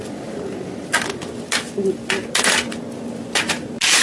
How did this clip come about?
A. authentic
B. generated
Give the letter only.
A